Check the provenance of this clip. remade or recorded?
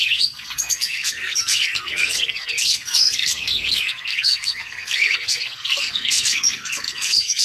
remade